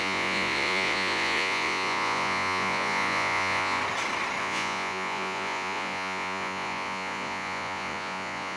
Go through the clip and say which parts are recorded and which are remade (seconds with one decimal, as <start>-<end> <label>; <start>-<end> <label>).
0.0-3.8 remade; 3.8-4.4 recorded; 4.4-8.6 remade